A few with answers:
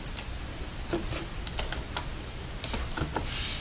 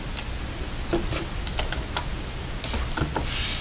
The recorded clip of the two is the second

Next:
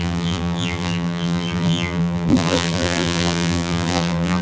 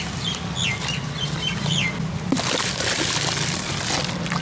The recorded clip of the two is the second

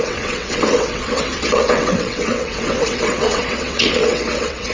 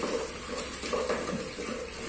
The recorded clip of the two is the second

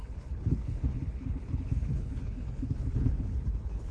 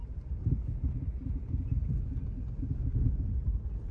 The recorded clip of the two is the second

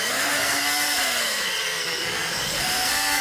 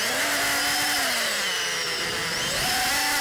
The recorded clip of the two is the second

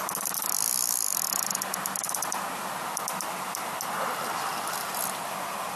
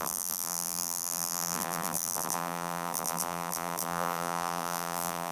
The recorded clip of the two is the first